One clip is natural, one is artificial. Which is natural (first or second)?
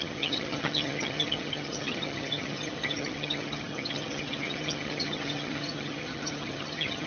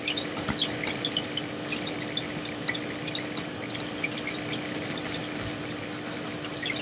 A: second